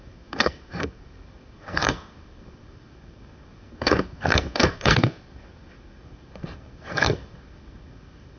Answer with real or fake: fake